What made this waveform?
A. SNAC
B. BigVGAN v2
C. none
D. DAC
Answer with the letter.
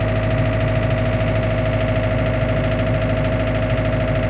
C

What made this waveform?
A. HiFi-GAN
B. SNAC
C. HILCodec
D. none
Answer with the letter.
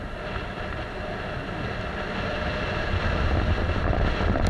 D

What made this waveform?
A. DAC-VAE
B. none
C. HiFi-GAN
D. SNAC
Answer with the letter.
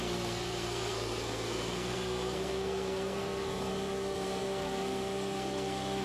D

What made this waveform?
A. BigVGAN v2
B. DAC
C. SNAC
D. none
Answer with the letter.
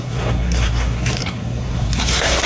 C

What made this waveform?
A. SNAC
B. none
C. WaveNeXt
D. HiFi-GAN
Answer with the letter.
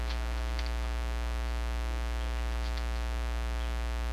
B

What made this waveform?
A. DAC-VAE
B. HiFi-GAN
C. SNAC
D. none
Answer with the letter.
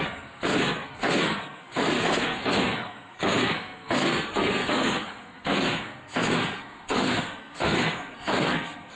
C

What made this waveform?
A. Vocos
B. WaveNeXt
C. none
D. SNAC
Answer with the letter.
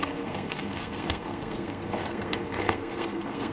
D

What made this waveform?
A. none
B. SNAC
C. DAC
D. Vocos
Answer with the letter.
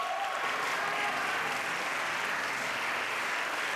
A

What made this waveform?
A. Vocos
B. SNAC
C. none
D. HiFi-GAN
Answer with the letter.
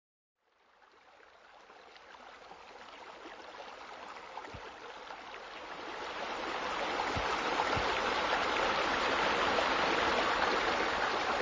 C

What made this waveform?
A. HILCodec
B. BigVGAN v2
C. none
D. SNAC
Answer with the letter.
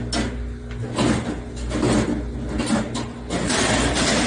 C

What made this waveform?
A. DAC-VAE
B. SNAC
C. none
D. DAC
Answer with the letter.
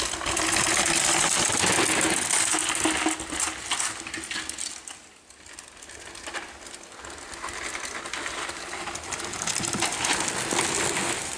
C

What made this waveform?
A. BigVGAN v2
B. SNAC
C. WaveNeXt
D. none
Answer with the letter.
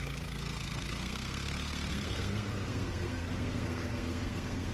B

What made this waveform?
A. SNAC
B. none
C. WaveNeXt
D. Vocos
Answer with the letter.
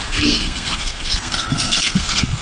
A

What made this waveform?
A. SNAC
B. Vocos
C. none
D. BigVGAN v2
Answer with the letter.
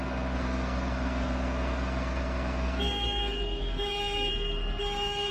A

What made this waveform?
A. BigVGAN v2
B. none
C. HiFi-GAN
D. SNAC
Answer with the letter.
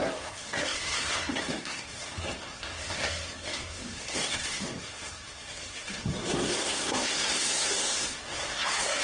D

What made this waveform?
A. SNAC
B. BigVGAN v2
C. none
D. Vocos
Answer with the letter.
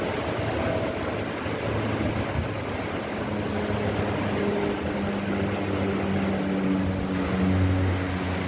C